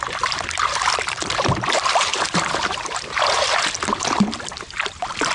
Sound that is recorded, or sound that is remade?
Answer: remade